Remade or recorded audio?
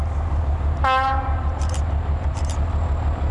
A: recorded